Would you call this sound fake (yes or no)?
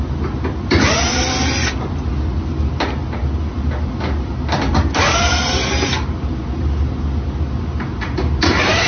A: no